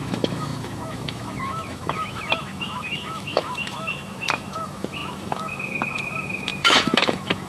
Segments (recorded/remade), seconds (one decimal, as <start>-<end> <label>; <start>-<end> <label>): 0.0-7.5 remade